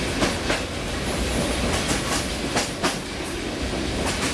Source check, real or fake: real